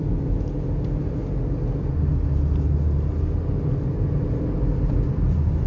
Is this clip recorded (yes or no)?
yes